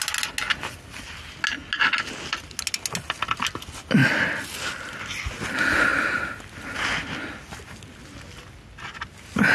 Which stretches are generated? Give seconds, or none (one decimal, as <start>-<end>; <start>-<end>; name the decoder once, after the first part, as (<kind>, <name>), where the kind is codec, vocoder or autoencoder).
none